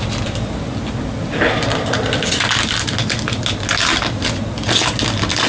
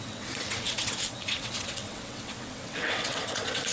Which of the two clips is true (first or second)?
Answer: first